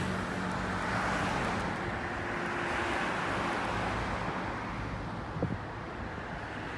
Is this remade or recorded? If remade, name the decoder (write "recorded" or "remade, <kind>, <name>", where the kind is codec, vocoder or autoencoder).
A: recorded